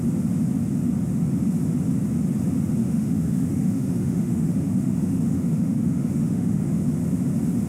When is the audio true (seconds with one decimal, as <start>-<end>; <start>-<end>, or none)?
0.0-2.8; 6.8-7.7

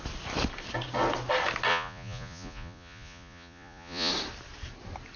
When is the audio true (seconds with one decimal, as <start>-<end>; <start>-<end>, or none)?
0.0-1.7; 4.1-5.2

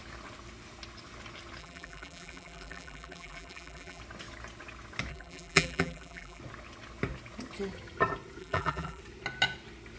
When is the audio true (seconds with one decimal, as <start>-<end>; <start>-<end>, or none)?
0.0-1.6; 4.0-5.1; 6.4-8.4; 9.0-10.0

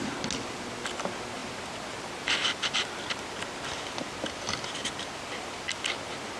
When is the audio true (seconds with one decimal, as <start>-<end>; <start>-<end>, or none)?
0.0-6.4

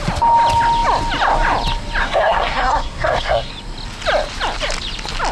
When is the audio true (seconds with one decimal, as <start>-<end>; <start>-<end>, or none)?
0.0-2.0; 3.5-5.3

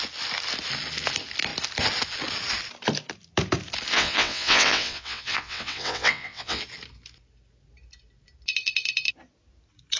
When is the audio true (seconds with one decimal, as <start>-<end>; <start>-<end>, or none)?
0.0-3.9; 6.6-10.0

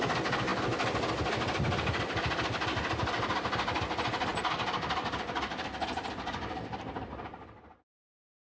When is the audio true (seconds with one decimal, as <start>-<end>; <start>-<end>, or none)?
0.0-8.5

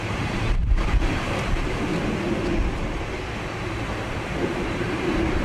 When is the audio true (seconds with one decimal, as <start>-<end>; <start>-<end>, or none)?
1.9-4.4